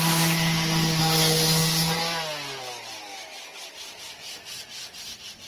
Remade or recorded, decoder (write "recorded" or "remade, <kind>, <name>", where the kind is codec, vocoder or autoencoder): recorded